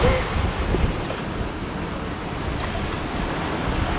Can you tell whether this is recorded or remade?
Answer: recorded